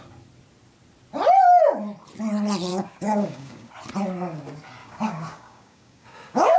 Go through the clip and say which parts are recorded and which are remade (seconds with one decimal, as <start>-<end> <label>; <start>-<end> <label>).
0.0-2.7 recorded; 2.7-3.7 remade; 3.7-4.8 recorded; 4.8-6.6 remade